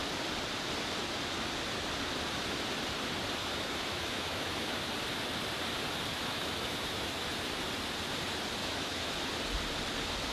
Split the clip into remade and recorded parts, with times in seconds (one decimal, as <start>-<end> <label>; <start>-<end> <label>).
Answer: 0.0-3.4 recorded; 3.4-4.9 remade; 4.9-6.1 recorded; 6.1-7.2 remade; 7.2-8.6 recorded; 8.6-9.1 remade; 9.1-10.3 recorded